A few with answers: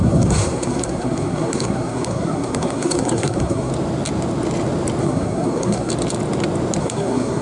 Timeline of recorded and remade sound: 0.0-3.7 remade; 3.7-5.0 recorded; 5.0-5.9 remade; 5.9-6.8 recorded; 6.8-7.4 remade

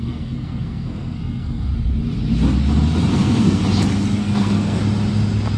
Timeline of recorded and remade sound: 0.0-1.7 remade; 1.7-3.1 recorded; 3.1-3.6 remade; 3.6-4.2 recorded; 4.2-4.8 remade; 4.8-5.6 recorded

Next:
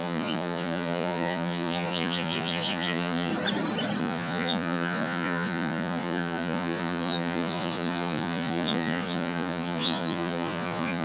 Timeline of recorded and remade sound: 0.0-3.3 remade; 3.3-4.0 recorded; 4.0-11.0 remade

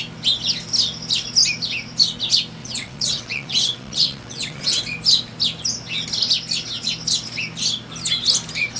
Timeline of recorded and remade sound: 0.0-2.6 recorded; 2.6-4.8 remade; 4.8-8.8 recorded

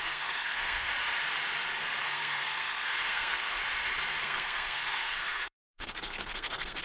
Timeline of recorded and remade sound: 0.0-0.9 remade; 0.9-2.0 recorded; 2.0-3.6 remade; 3.6-4.2 recorded; 4.2-6.8 remade

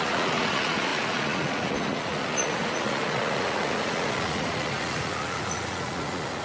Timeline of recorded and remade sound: 0.0-6.4 remade